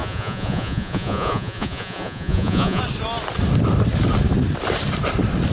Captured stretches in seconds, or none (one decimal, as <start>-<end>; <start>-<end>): 2.8-5.5